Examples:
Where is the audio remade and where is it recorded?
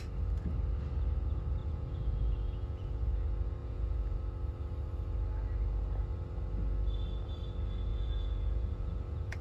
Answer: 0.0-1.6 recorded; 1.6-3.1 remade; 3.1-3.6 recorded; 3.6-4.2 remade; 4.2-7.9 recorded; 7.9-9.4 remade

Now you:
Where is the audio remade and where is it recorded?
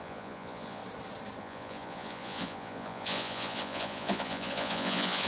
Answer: 0.0-0.8 remade; 0.8-1.4 recorded; 1.4-5.3 remade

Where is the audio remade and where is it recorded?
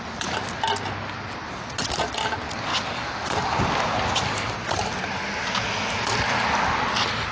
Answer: 0.0-7.3 recorded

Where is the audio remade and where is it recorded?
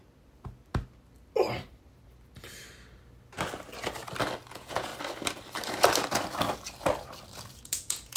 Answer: 0.0-4.5 recorded; 4.5-4.9 remade; 4.9-7.6 recorded; 7.6-8.2 remade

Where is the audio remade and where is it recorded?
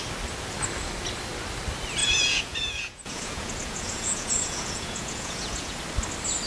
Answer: 0.0-2.0 recorded; 2.0-5.8 remade; 5.8-6.5 recorded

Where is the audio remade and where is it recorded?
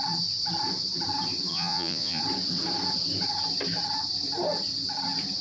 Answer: 0.0-1.5 recorded; 1.5-2.2 remade; 2.2-5.4 recorded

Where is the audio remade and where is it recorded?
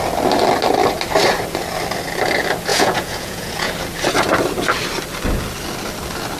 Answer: 0.0-2.7 recorded; 2.7-3.7 remade; 3.7-6.4 recorded